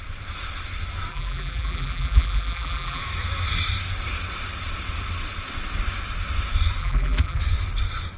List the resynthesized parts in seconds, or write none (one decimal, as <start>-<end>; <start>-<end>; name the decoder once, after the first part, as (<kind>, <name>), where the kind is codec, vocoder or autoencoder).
1.1-3.0 (vocoder, BigVGAN v2); 6.8-7.4